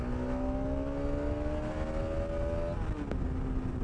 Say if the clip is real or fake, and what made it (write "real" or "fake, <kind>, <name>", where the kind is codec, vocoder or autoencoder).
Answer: real